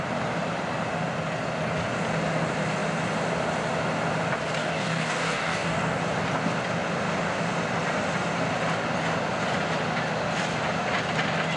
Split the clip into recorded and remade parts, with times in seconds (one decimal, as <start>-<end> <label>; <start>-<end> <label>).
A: 0.0-4.6 recorded; 4.6-6.0 remade; 6.0-11.6 recorded